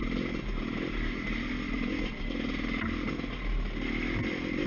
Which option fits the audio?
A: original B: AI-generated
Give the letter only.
A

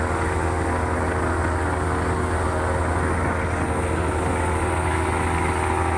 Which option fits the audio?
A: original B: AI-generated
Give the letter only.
A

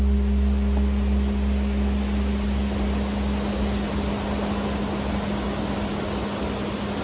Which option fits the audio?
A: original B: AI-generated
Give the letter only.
A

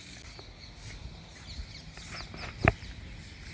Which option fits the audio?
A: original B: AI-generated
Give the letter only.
A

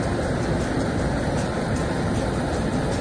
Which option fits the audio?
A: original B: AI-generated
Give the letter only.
A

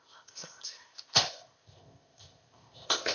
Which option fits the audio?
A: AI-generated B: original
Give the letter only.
A